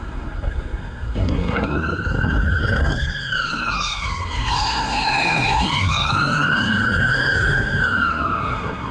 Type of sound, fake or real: fake